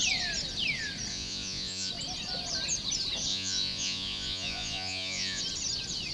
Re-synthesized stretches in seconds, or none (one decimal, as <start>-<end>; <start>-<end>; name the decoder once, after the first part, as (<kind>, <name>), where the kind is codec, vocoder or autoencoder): 1.1-1.9 (vocoder, Vocos); 3.3-5.4